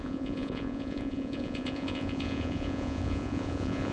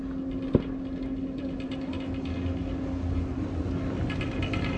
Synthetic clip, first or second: first